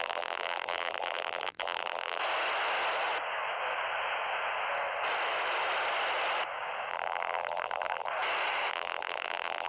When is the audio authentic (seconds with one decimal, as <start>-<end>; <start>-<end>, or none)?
2.2-6.9; 8.1-8.7